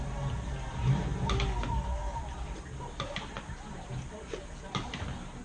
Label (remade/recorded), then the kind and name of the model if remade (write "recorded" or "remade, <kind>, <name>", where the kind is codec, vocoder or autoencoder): recorded